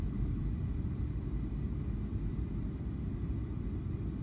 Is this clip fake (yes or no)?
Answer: no